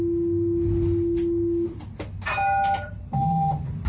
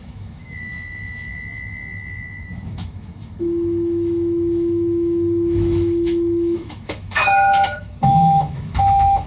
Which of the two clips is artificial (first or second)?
second